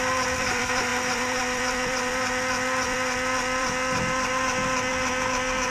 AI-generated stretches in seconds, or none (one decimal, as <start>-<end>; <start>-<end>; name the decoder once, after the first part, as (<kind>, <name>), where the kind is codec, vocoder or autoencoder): 0.0-5.7 (vocoder, BigVGAN v2)